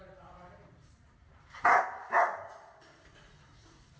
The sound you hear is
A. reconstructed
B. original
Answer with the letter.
A